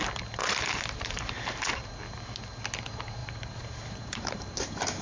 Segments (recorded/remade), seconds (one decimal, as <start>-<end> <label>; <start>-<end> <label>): 0.0-0.4 recorded; 0.4-1.7 remade; 1.7-3.2 recorded; 3.2-5.0 remade